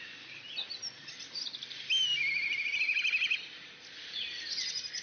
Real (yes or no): no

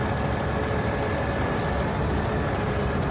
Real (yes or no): yes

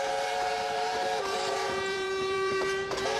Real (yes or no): no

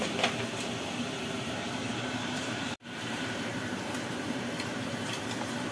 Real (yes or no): no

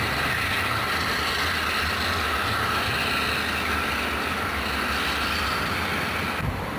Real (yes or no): yes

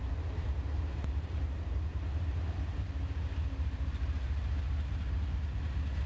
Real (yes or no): no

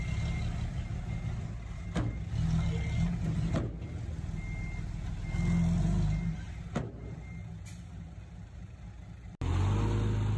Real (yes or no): yes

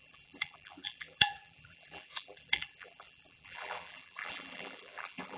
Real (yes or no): no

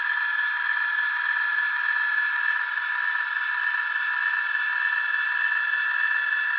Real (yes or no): yes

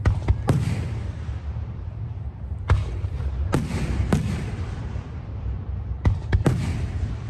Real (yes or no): no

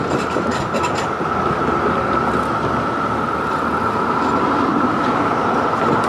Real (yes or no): yes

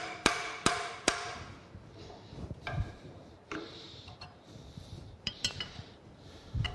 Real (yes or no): no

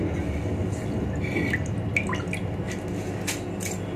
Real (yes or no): yes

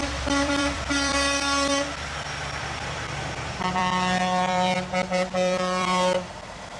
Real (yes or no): no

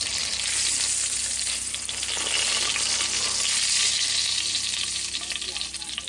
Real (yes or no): yes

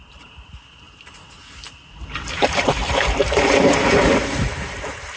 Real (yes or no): no